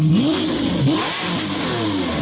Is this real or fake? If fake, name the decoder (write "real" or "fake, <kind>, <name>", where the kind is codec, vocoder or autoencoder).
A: real